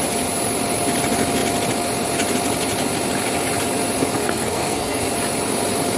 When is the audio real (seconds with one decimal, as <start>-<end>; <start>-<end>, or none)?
0.0-4.2; 5.0-6.0